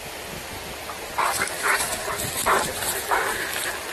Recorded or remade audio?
recorded